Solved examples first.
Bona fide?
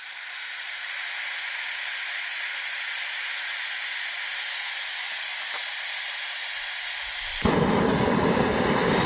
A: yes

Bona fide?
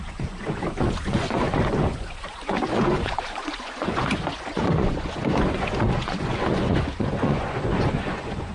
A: no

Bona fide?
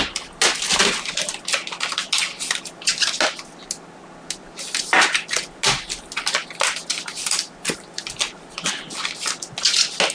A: yes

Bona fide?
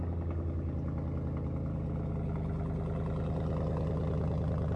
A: yes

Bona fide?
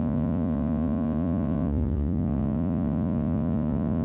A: no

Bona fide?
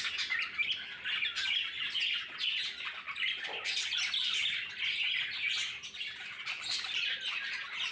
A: yes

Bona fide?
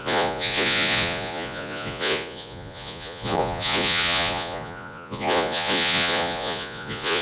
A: no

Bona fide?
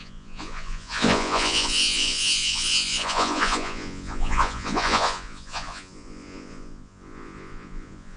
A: no